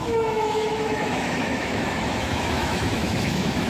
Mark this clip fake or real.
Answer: fake